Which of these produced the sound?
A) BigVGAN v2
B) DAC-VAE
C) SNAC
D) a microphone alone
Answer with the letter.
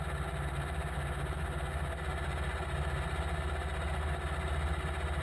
D